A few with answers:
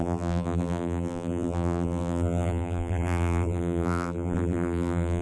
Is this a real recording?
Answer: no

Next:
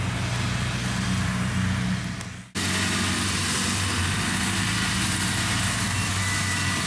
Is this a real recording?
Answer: yes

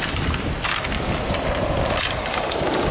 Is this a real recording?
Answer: yes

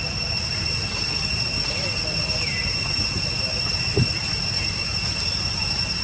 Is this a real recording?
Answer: yes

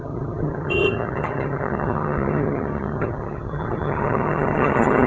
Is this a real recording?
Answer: no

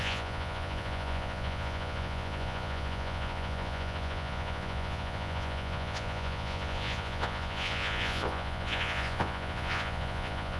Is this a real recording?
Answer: no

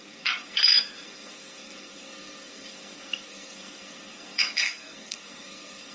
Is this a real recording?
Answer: no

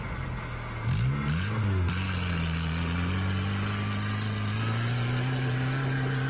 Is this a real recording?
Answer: yes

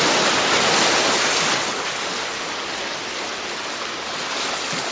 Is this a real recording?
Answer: yes